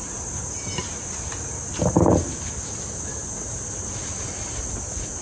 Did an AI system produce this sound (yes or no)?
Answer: no